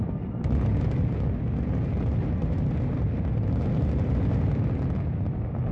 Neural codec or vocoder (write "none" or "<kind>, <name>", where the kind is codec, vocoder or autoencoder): none